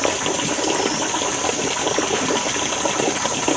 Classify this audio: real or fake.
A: real